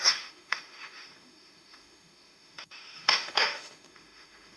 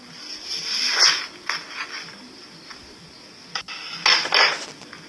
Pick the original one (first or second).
second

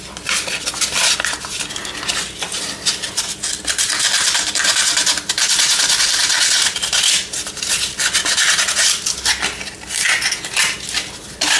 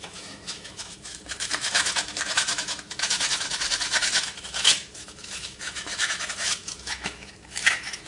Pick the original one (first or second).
first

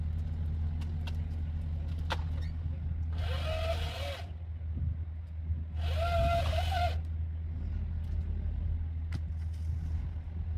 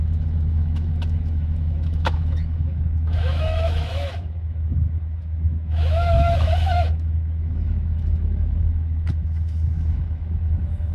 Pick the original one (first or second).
first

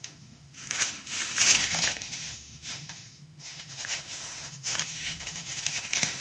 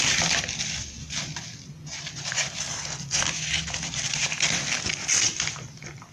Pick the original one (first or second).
second